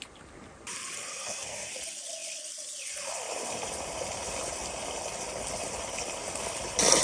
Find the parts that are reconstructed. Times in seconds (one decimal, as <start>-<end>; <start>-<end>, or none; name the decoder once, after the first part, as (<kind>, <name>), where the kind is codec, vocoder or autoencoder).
1.1-1.7 (codec, SNAC)